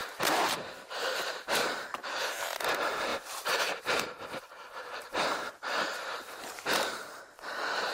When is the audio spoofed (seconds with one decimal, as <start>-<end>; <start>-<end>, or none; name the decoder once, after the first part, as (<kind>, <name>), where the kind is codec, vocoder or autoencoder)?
0.0-3.1 (vocoder, BigVGAN v2); 3.6-7.9